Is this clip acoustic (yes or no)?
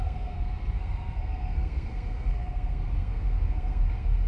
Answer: no